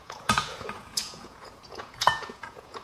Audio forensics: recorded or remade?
remade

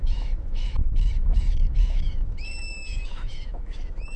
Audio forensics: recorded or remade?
remade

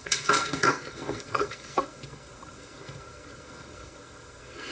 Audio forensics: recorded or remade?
remade